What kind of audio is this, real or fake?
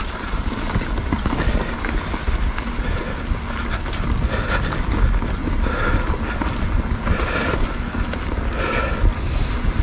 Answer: real